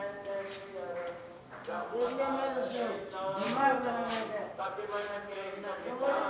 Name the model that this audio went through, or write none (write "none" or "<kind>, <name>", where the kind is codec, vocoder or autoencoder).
none